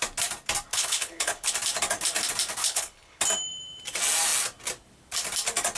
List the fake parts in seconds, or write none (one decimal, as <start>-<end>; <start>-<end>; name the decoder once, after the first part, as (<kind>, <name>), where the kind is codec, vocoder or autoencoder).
0.7-1.5 (codec, HILCodec); 2.6-3.2